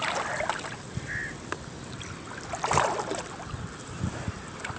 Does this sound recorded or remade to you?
recorded